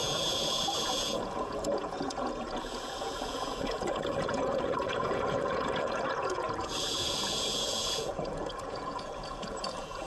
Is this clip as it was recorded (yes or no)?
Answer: no